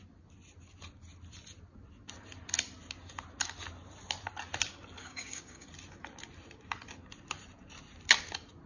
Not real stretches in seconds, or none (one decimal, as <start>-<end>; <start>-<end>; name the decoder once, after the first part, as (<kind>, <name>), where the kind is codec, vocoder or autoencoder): 5.0-5.7 (codec, DAC)